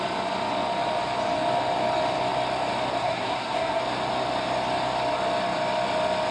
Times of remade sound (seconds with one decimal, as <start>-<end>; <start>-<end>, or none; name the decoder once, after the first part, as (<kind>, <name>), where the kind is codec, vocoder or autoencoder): 3.0-3.8 (codec, SNAC)